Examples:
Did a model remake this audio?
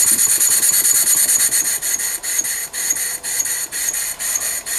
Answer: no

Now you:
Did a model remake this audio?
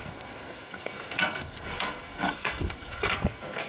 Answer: yes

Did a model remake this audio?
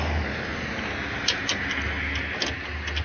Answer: no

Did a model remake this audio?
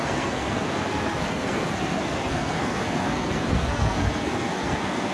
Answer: yes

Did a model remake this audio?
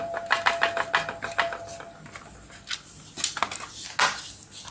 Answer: no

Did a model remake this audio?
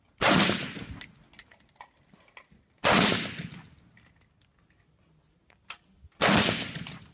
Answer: no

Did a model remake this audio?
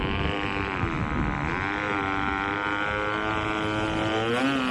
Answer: no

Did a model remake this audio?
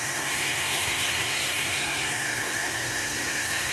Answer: yes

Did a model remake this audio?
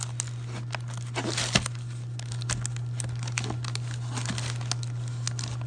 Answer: no